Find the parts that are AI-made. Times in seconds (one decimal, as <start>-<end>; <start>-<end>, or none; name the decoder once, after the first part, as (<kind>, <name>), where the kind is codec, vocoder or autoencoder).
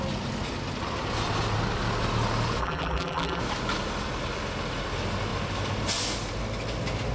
2.6-3.4 (vocoder, BigVGAN v2)